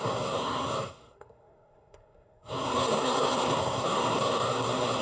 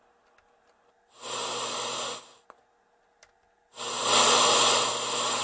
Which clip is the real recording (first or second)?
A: second